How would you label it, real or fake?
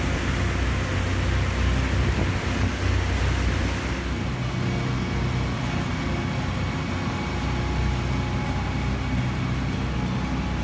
real